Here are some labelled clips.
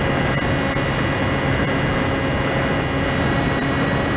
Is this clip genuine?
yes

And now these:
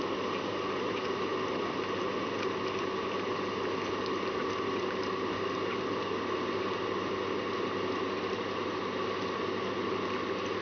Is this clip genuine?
yes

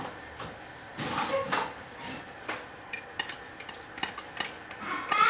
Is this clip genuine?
yes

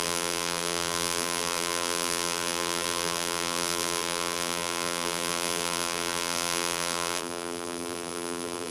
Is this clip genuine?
no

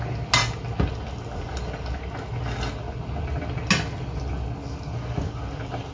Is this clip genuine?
yes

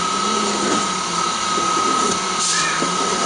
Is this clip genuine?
yes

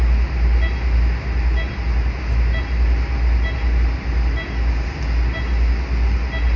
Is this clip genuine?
yes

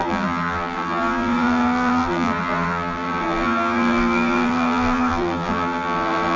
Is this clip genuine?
no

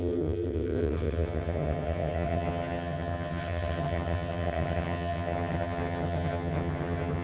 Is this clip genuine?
no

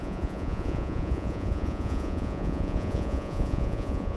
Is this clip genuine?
no